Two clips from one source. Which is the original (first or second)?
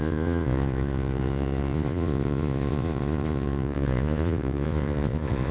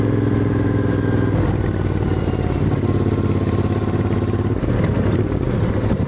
second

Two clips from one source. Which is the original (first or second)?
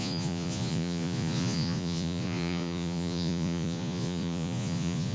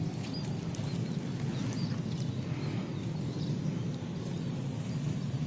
second